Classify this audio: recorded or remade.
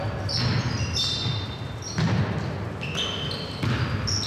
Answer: recorded